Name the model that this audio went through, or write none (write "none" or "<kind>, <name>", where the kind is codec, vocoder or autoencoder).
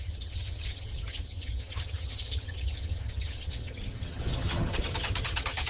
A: vocoder, HiFi-GAN